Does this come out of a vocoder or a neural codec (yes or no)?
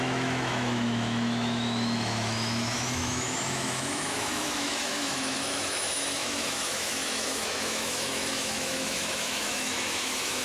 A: yes